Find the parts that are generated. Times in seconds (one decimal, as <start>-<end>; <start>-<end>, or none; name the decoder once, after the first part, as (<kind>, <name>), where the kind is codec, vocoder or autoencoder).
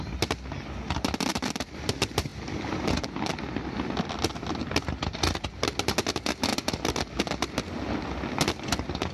none